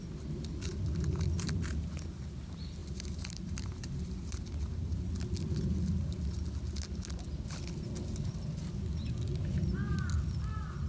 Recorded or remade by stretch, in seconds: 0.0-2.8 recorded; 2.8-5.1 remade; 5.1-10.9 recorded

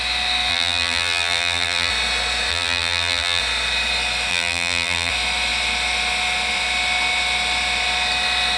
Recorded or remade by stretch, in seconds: 0.0-0.5 recorded; 0.5-1.9 remade; 1.9-2.5 recorded; 2.5-3.4 remade; 3.4-4.3 recorded; 4.3-5.1 remade; 5.1-8.6 recorded

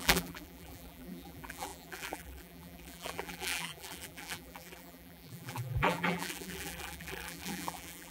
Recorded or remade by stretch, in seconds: 0.0-8.1 remade

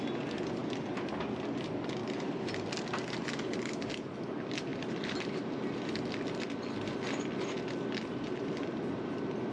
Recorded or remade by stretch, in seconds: 0.0-2.0 recorded; 2.0-2.7 remade; 2.7-9.5 recorded

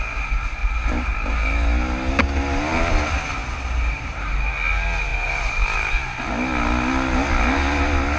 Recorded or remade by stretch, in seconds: 0.0-0.6 recorded; 0.6-1.3 remade; 1.3-3.4 recorded; 3.4-4.3 remade; 4.3-5.1 recorded; 5.1-5.9 remade; 5.9-8.2 recorded

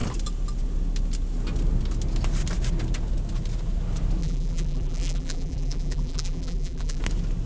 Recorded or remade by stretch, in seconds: 0.0-4.2 recorded; 4.2-7.0 remade; 7.0-7.5 recorded

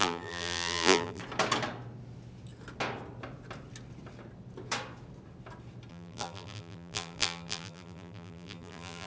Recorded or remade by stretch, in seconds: 0.0-1.2 remade; 1.2-5.9 recorded; 5.9-9.1 remade